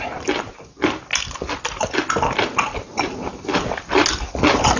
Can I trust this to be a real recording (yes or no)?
yes